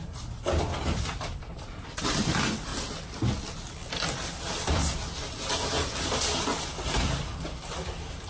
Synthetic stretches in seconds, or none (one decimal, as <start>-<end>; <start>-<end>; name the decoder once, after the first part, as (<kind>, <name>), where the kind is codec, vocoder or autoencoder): 0.0-2.7 (vocoder, BigVGAN v2); 6.0-8.3